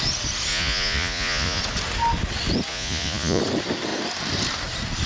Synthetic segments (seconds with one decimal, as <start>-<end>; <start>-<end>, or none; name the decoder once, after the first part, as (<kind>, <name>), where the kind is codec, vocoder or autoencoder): 0.5-1.6 (vocoder, Vocos); 2.7-3.4